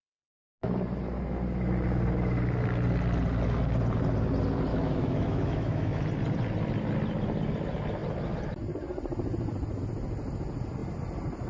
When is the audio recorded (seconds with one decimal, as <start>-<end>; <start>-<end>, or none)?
0.0-4.7; 6.0-11.5